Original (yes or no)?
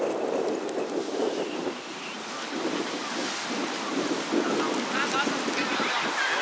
yes